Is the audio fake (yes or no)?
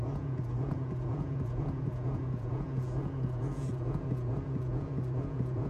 yes